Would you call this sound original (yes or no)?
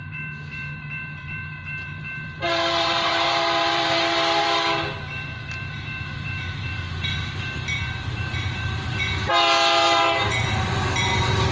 no